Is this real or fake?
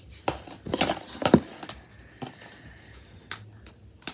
real